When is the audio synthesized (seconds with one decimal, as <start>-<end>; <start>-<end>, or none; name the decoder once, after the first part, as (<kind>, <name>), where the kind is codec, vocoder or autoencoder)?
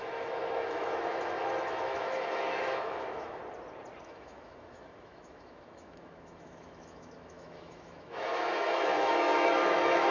0.0-3.4 (autoencoder, DAC-VAE); 4.0-10.1